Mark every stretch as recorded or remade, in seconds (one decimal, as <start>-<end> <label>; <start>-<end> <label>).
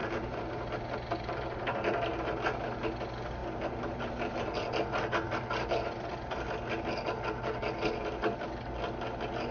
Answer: 0.0-1.6 remade; 1.6-3.4 recorded; 3.4-4.3 remade; 4.3-9.5 recorded